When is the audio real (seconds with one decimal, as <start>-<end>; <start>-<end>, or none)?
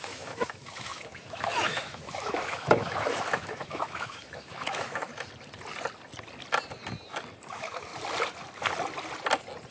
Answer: 5.1-7.5; 7.9-9.7